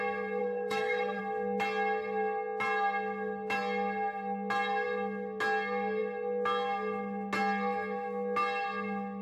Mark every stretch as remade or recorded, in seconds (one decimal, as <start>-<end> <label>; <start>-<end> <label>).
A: 0.0-0.4 recorded; 0.4-1.2 remade; 1.2-9.2 recorded